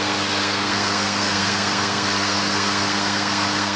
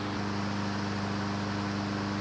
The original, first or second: second